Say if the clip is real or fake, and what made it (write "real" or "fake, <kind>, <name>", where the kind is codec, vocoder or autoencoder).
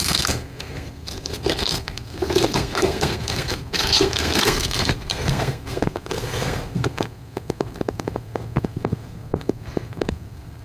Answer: fake, codec, SNAC